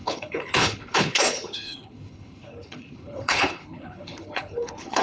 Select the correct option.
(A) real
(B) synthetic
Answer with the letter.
B